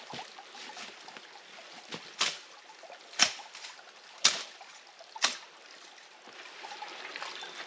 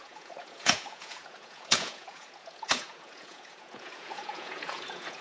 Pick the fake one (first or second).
second